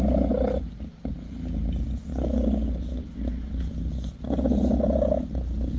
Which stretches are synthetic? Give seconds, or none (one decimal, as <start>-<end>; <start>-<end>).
none